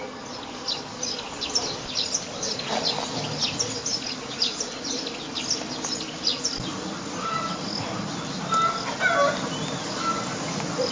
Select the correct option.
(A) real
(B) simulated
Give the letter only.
A